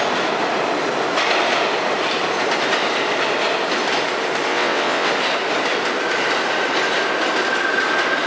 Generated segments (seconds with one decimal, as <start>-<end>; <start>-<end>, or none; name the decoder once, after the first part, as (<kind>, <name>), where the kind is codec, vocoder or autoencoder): 4.5-5.1 (vocoder, WaveNeXt)